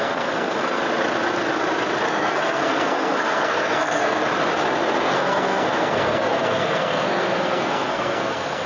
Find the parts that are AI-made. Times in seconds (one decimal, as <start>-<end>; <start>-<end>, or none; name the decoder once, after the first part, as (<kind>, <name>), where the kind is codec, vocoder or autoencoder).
0.0-0.8 (codec, SNAC); 2.1-4.2; 5.0-8.7